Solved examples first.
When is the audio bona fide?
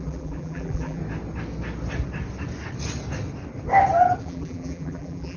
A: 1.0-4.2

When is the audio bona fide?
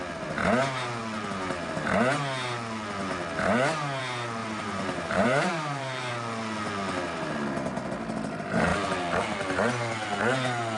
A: 0.0-4.4; 6.1-10.8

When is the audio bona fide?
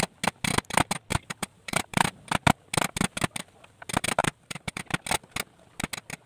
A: 0.0-1.1; 2.2-4.2; 4.8-6.3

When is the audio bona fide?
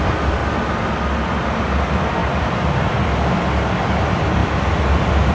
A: 0.4-1.6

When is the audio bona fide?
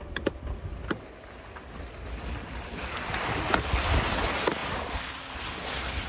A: 0.0-6.1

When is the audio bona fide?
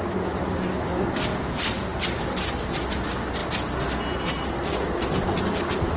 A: 0.0-1.9; 2.6-3.4; 5.3-6.0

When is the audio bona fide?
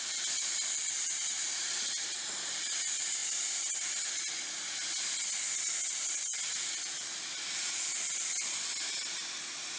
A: 0.0-0.8; 1.8-3.2; 4.0-9.8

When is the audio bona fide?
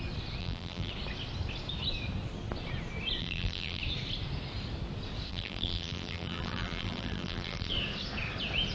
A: 0.0-0.4; 0.9-3.2; 3.8-5.3; 7.7-8.7